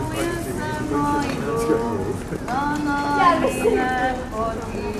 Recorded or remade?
recorded